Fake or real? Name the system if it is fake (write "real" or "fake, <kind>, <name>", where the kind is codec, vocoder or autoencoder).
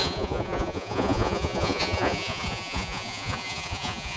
fake, vocoder, Vocos